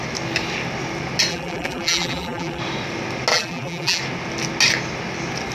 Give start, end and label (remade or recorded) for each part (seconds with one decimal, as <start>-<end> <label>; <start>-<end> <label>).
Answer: 0.0-1.3 recorded; 1.3-2.6 remade; 2.6-3.3 recorded; 3.3-4.0 remade; 4.0-5.5 recorded